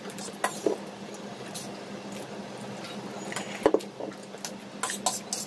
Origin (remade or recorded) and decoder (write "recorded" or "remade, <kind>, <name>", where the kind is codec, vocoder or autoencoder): recorded